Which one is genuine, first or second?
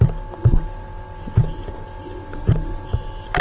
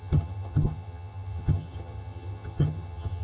first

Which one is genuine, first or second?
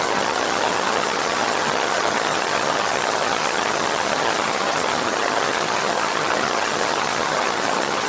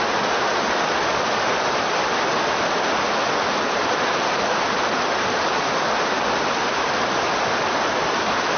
second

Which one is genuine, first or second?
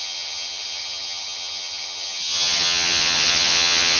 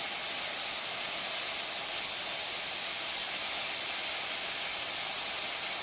second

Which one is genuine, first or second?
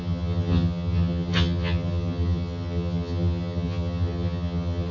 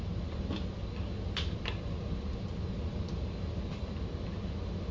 second